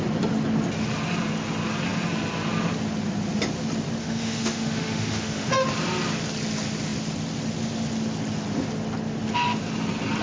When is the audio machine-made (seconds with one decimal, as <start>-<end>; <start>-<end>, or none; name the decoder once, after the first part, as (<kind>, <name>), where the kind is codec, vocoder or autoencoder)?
4.0-5.5 (autoencoder, DAC-VAE)